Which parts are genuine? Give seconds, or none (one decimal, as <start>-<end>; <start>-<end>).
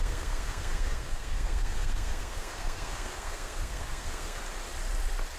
4.4-5.4